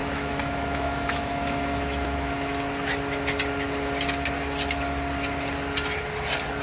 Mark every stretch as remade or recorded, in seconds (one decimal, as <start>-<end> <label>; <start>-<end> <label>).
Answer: 0.0-2.6 remade; 2.6-6.6 recorded